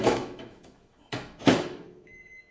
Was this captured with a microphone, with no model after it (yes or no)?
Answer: no